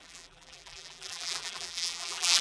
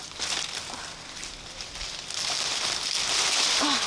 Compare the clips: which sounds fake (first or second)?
first